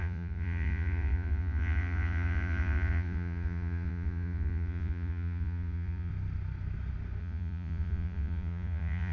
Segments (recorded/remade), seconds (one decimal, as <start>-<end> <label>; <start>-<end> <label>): 0.0-6.1 remade; 6.1-7.2 recorded; 7.2-9.1 remade